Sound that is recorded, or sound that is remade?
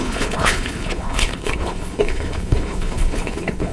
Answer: remade